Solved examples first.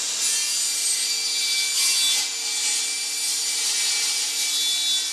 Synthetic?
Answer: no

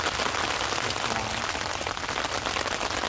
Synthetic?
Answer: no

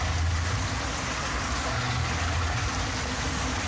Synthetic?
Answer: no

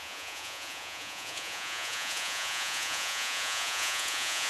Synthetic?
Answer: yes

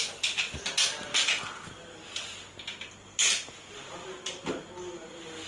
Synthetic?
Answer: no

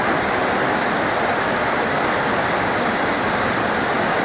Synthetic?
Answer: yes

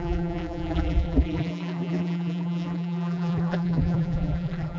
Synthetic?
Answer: yes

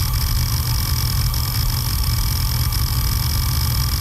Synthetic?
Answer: no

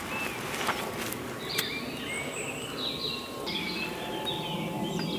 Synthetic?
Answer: no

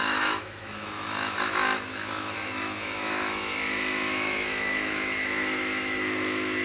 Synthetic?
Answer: yes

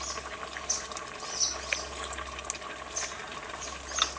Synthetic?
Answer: no